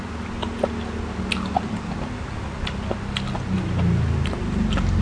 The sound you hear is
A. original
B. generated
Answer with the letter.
A